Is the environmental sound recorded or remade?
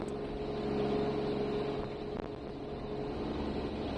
recorded